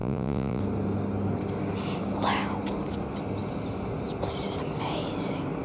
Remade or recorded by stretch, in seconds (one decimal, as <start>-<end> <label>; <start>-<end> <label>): 0.0-0.6 remade; 0.6-5.6 recorded